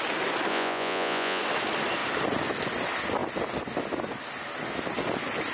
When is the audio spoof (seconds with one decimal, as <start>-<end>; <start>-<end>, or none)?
0.5-1.4